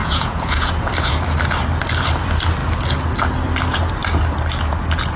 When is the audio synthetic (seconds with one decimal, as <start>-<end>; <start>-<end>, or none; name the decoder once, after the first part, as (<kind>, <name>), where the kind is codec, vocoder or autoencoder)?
0.0-0.7 (vocoder, Vocos)